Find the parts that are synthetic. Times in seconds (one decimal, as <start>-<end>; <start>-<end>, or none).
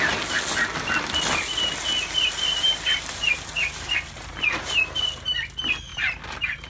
0.7-4.3; 5.9-6.7